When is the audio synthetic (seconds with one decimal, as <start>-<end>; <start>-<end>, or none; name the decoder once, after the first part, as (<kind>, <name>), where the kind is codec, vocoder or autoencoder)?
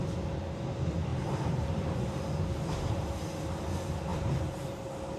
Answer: 1.1-3.5 (vocoder, BigVGAN v2); 4.1-5.2